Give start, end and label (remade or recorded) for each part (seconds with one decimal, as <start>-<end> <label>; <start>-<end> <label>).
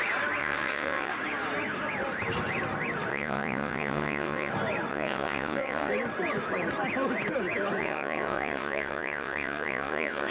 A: 0.0-0.4 recorded; 0.4-1.1 remade; 1.1-3.1 recorded; 3.1-4.5 remade; 4.5-4.9 recorded; 4.9-5.9 remade; 5.9-7.8 recorded; 7.8-10.3 remade